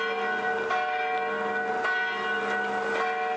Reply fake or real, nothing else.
real